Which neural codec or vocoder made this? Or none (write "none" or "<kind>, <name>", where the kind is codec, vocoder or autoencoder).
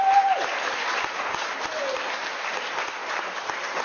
none